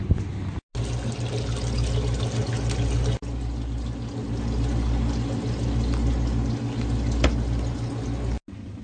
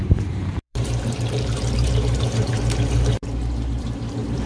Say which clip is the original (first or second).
first